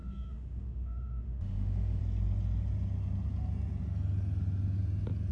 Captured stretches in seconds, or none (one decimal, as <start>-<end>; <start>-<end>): 2.0-5.3